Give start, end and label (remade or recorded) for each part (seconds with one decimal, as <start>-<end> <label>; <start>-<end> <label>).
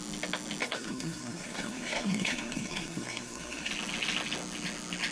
0.0-0.6 recorded; 0.6-3.7 remade; 3.7-5.1 recorded